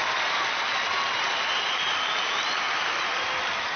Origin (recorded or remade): recorded